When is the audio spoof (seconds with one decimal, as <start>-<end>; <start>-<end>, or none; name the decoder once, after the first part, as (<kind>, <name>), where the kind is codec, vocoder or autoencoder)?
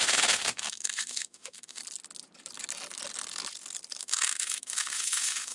0.0-1.8 (autoencoder, DAC-VAE); 4.0-5.5